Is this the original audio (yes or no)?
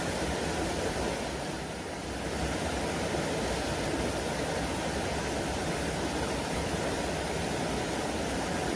yes